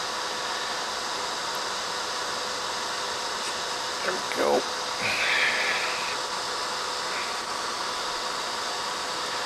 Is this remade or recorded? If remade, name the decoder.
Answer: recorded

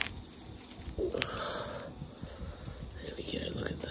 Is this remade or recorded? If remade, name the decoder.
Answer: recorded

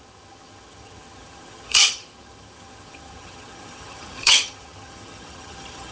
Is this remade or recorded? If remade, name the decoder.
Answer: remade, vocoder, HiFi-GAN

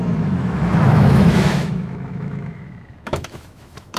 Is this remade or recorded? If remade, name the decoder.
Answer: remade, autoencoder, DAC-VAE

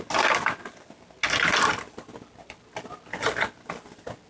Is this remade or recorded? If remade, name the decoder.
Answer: recorded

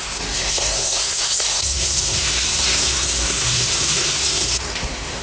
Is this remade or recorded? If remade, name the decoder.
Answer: remade, codec, SNAC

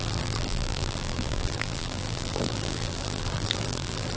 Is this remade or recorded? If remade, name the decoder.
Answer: remade, vocoder, BigVGAN v2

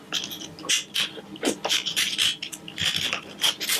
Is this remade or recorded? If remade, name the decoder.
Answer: recorded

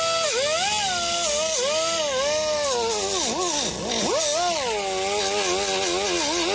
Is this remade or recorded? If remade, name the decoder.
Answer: recorded